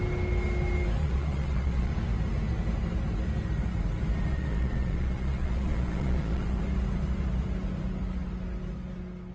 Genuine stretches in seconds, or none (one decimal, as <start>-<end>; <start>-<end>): 0.0-1.0; 1.9-4.3; 6.6-9.3